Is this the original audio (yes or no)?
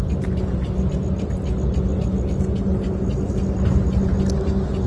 yes